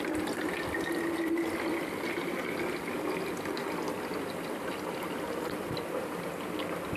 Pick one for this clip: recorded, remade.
recorded